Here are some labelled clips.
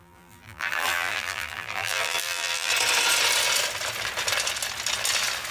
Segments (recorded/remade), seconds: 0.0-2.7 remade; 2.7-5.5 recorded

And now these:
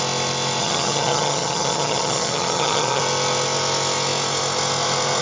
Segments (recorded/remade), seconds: 0.0-0.6 recorded; 0.6-3.0 remade; 3.0-5.2 recorded

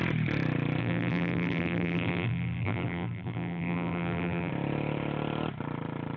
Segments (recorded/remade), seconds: 0.0-0.8 recorded; 0.8-4.5 remade; 4.5-6.2 recorded

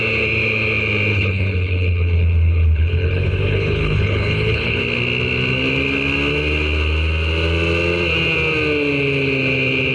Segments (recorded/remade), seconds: 0.0-1.1 recorded; 1.1-4.8 remade; 4.8-9.9 recorded

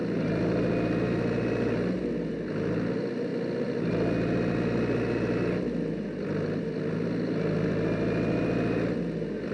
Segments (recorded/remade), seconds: 0.0-9.5 recorded